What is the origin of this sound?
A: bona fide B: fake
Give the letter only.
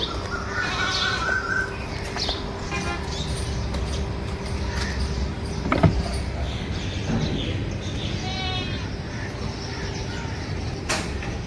A